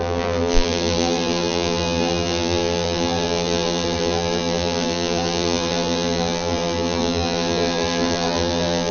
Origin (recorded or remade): remade